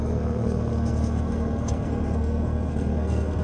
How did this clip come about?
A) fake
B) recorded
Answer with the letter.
A